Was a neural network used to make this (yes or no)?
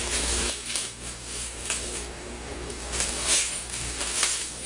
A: yes